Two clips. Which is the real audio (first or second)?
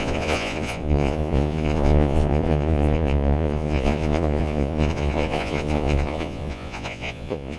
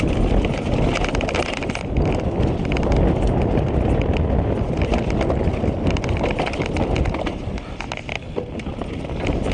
second